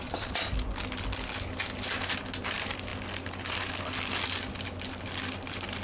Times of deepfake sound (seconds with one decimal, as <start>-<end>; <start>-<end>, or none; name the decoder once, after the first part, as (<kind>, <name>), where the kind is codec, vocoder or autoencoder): none